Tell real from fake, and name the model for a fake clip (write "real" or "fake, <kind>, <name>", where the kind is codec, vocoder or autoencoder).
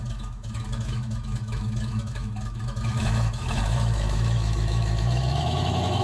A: fake, autoencoder, DAC-VAE